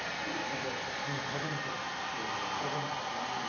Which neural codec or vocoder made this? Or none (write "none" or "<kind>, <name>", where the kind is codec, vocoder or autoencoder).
none